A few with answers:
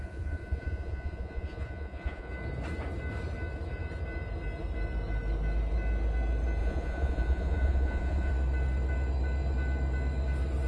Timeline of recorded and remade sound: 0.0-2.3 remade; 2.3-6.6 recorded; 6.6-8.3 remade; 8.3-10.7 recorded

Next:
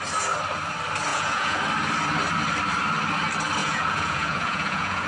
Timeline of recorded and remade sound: 0.0-1.1 recorded; 1.1-1.6 remade; 1.6-3.6 recorded; 3.6-5.1 remade

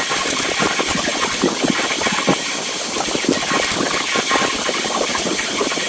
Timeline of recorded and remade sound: 0.0-5.1 recorded; 5.1-5.9 remade

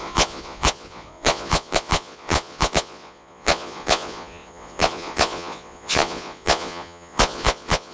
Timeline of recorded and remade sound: 0.0-7.9 remade

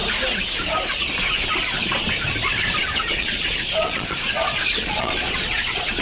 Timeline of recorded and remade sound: 0.0-3.1 recorded; 3.1-6.0 remade

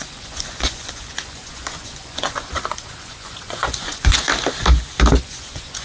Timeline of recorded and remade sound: 0.0-4.3 remade; 4.3-5.2 recorded; 5.2-5.8 remade

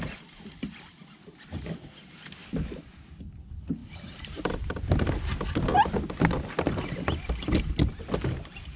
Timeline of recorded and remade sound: 0.0-8.8 recorded